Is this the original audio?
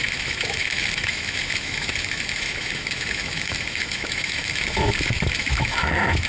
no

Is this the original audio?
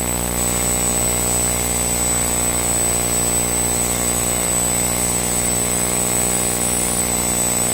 no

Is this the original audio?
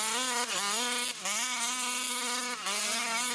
yes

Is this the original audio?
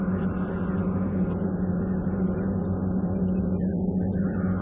yes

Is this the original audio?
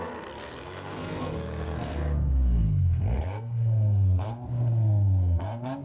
no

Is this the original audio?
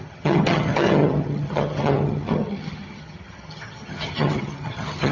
no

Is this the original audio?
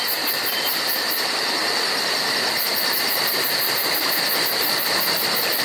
no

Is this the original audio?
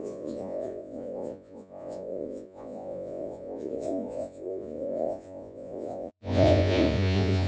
no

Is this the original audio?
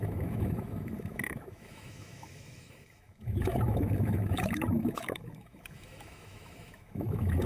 no